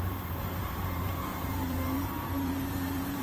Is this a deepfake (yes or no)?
yes